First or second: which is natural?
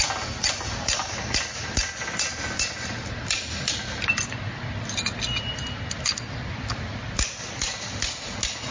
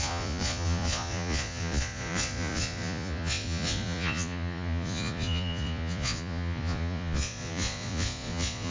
first